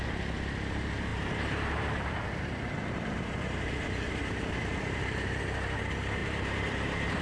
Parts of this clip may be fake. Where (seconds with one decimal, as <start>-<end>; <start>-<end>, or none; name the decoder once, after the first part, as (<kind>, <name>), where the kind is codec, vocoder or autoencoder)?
1.1-5.4 (vocoder, BigVGAN v2); 6.2-7.2